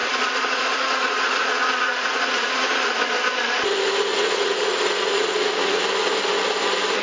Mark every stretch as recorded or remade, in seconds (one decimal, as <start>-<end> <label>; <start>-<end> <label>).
0.0-2.9 remade; 2.9-4.1 recorded; 4.1-5.8 remade; 5.8-7.0 recorded